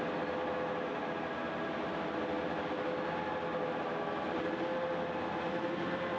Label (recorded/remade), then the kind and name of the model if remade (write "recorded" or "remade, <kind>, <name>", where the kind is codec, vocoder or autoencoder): recorded